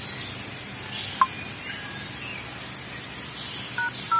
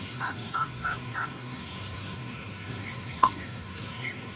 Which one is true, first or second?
first